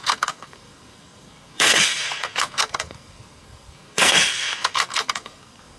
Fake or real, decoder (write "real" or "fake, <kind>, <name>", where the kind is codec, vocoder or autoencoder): fake, codec, SNAC